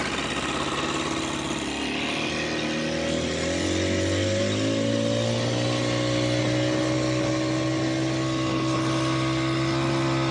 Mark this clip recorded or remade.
recorded